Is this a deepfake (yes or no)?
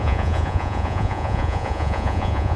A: yes